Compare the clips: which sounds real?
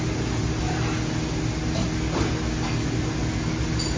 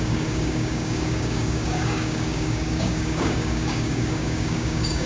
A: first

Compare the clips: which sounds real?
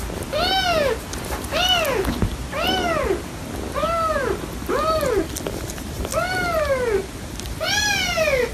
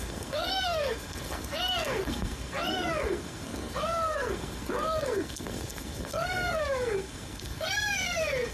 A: first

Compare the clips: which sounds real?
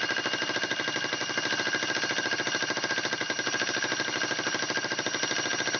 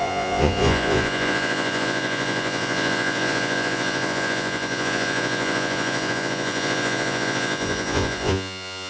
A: first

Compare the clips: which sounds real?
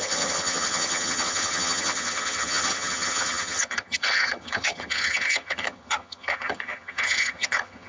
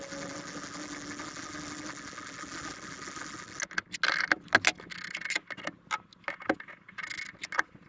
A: second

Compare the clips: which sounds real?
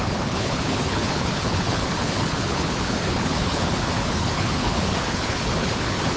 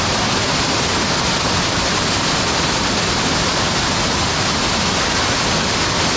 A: second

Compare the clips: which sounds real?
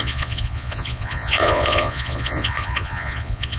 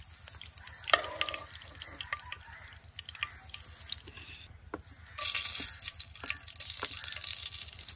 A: second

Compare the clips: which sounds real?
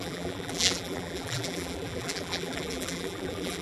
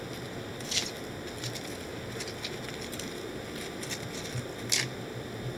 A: second